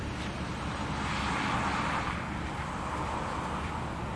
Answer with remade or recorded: recorded